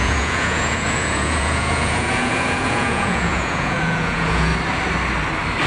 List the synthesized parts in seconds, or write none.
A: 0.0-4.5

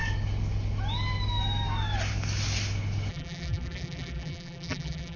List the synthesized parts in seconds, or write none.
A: 3.1-5.2

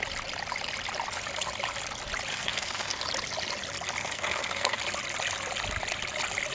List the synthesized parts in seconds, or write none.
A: 2.3-3.0; 4.0-4.8

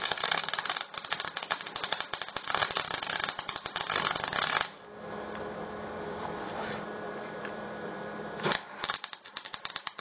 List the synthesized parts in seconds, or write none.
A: 0.0-10.0

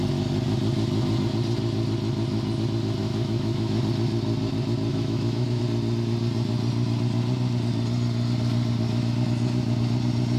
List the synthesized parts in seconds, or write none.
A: 3.0-3.8; 4.9-5.6

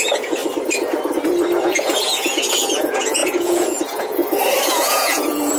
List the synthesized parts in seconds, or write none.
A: 0.0-0.4; 1.6-4.2; 4.7-5.6

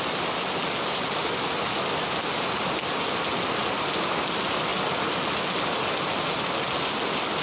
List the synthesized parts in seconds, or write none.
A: none